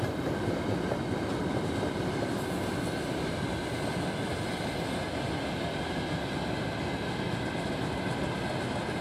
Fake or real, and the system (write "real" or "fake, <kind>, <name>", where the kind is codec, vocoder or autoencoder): real